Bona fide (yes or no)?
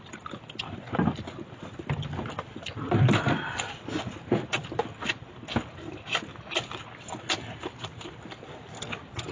yes